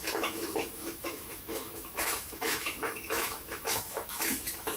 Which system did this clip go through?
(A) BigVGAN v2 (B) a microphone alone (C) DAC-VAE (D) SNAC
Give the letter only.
C